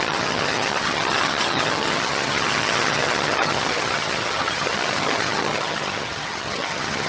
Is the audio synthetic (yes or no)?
yes